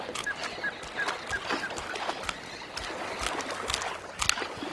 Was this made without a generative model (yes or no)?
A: yes